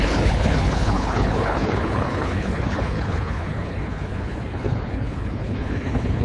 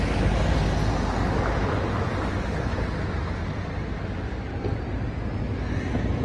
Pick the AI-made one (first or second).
first